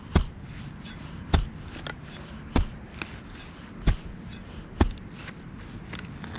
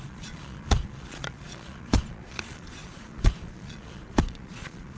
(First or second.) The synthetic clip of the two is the second